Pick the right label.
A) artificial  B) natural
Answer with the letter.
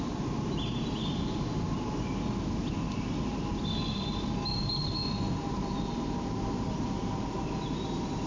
B